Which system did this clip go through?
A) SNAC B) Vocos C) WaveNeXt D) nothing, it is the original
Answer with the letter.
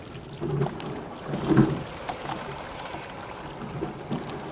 D